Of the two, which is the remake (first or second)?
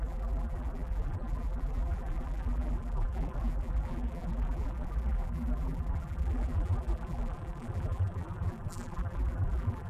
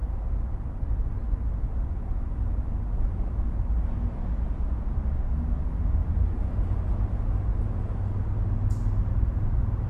first